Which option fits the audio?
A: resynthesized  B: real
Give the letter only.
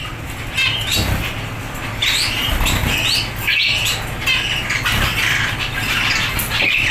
B